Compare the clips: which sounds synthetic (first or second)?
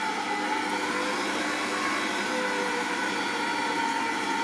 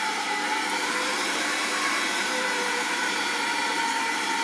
second